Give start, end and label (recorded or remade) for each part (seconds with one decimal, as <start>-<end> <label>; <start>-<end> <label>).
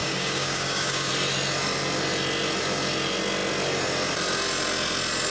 0.0-1.1 remade; 1.1-5.3 recorded